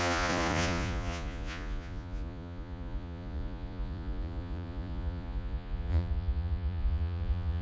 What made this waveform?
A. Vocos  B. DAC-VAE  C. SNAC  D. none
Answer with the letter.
A